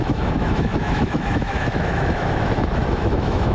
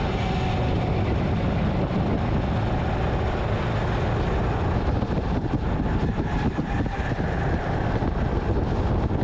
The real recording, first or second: second